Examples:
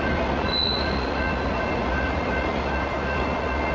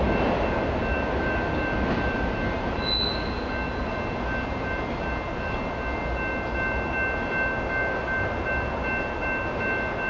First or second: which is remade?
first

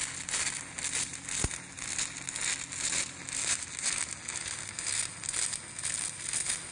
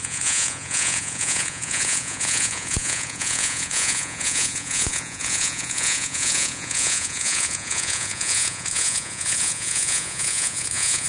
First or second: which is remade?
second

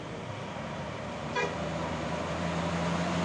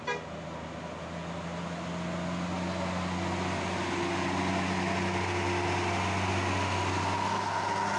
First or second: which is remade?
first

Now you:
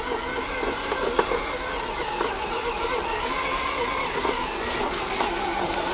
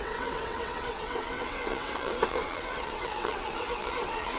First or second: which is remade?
second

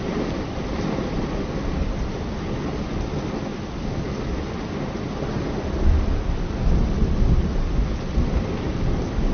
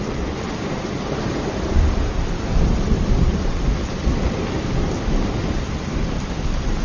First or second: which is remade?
second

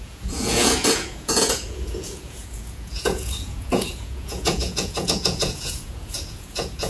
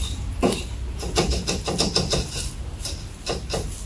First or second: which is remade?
first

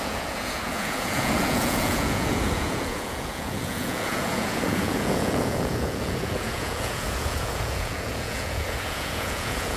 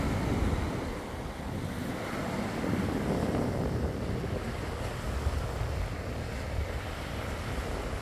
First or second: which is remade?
first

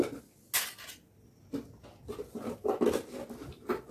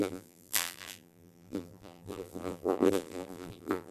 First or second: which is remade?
second